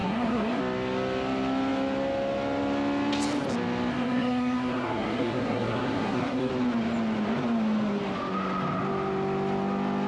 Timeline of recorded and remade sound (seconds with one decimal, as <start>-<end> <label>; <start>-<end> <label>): 0.0-0.6 remade; 0.6-3.9 recorded; 3.9-6.5 remade; 6.5-10.1 recorded